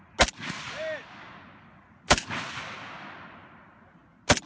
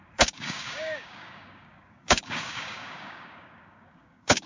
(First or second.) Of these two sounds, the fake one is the second